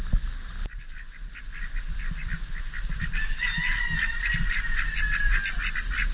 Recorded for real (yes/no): yes